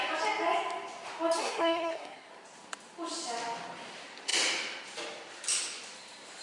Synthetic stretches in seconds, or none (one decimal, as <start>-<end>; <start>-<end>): 1.4-2.3